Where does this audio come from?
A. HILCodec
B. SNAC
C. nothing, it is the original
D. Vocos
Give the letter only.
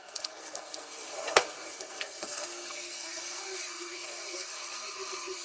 B